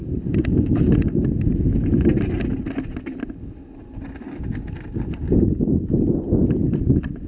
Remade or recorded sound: recorded